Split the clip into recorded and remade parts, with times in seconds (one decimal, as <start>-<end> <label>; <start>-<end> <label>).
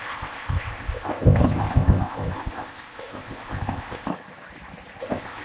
0.0-4.1 remade; 4.1-5.0 recorded; 5.0-5.4 remade